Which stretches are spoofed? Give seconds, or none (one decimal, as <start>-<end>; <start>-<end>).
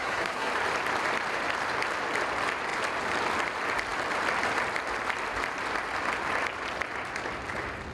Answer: 0.0-0.5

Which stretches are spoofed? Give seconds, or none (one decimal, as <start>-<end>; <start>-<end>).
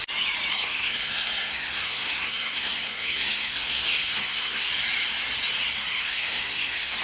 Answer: 0.5-4.7; 5.9-7.0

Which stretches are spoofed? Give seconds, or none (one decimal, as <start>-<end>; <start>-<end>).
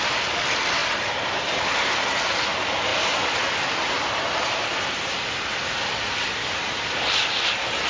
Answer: 2.9-4.8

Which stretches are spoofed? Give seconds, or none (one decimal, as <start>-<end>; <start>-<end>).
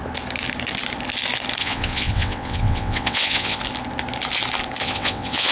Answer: 1.6-3.6; 4.8-5.5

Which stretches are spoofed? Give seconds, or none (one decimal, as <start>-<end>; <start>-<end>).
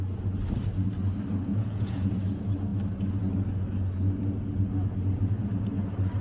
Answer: 1.5-2.2